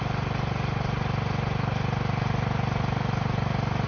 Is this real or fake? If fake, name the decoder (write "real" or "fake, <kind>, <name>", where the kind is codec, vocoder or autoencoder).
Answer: real